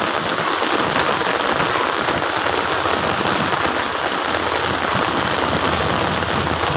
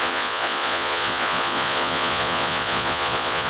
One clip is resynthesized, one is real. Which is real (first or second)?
first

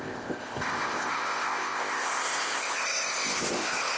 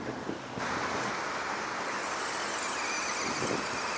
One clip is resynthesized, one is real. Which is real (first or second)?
second